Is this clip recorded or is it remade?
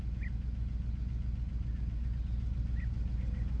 recorded